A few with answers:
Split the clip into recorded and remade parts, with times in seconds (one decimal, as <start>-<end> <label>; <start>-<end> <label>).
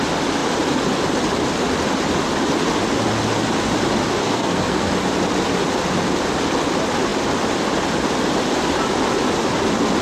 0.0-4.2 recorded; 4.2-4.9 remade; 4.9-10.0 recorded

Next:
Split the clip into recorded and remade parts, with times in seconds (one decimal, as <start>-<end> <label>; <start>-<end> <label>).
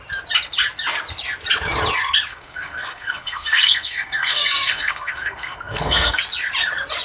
0.0-2.3 recorded; 2.3-6.2 remade; 6.2-7.0 recorded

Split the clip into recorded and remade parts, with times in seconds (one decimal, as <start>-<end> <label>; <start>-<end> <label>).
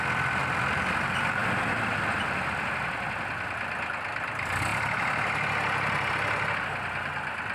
0.0-0.4 recorded; 0.4-0.9 remade; 0.9-7.5 recorded